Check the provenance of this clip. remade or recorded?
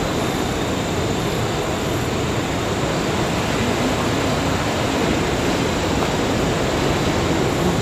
recorded